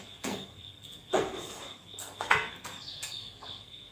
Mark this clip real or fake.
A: fake